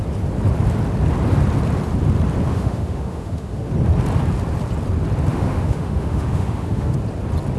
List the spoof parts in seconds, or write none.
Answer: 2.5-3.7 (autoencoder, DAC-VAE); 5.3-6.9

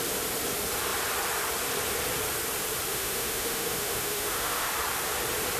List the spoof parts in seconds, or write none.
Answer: 2.9-4.7 (autoencoder, DAC-VAE)

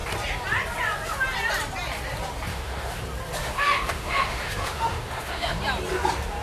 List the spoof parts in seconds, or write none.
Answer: 2.5-3.0 (autoencoder, DAC-VAE); 3.4-5.6

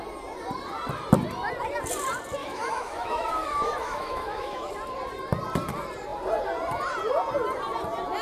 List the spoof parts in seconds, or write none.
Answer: 2.4-4.7 (autoencoder, DAC-VAE)